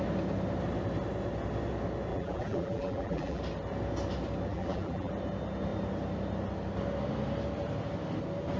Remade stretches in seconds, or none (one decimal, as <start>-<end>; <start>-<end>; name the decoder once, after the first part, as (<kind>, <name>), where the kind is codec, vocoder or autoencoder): 2.1-3.4 (vocoder, BigVGAN v2); 4.5-5.1